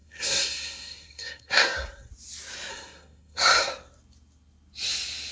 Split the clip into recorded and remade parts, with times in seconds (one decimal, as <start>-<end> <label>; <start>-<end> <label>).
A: 0.0-2.1 remade; 2.1-2.7 recorded; 2.7-3.7 remade; 3.7-5.3 recorded